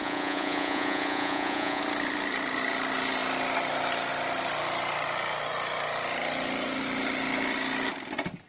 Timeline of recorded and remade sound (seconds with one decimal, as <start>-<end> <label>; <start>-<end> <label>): 0.0-1.8 remade; 1.8-8.5 recorded